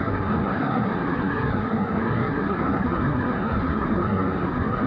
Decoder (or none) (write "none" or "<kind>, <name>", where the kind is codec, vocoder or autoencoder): codec, SNAC